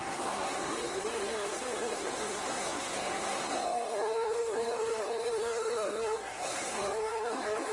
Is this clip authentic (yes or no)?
no